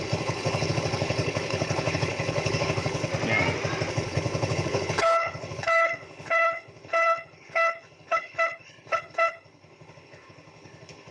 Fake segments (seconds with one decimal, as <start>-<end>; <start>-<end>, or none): 0.0-3.1; 3.9-11.1